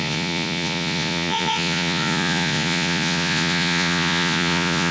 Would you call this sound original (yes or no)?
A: no